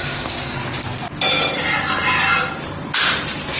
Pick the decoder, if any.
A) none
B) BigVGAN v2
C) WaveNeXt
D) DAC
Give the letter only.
A